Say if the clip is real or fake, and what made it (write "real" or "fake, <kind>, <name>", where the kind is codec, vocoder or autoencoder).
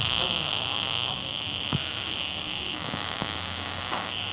fake, codec, DAC